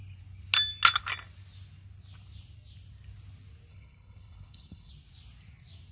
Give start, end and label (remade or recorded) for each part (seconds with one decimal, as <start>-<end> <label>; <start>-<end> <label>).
0.0-3.7 recorded; 3.7-4.9 remade; 4.9-5.9 recorded

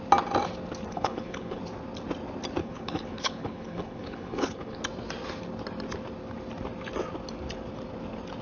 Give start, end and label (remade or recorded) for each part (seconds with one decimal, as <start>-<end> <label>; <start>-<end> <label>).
0.0-0.9 recorded; 0.9-1.6 remade; 1.6-2.6 recorded; 2.6-4.8 remade; 4.8-8.4 recorded

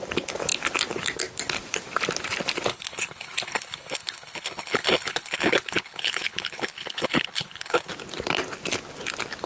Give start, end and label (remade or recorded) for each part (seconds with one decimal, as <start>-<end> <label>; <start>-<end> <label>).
0.0-2.7 recorded; 2.7-7.9 remade; 7.9-9.5 recorded

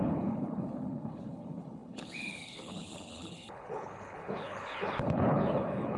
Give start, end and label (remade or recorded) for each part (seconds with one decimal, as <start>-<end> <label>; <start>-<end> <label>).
0.0-6.0 remade

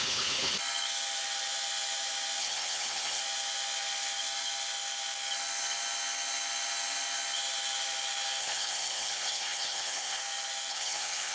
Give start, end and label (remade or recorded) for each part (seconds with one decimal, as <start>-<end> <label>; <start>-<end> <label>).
0.0-0.6 remade; 0.6-2.4 recorded; 2.4-3.2 remade; 3.2-8.4 recorded; 8.4-10.2 remade; 10.2-10.7 recorded; 10.7-11.3 remade

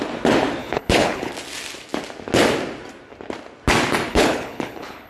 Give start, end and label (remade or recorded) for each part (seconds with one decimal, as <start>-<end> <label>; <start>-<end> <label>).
0.0-0.6 recorded; 0.6-1.3 remade; 1.3-4.1 recorded; 4.1-5.1 remade

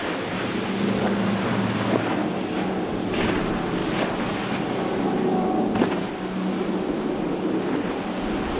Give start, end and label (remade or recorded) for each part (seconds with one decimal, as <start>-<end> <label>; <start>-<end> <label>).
0.0-8.6 recorded